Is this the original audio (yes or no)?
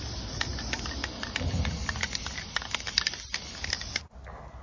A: yes